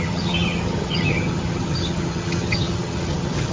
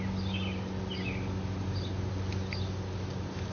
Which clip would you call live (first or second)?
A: second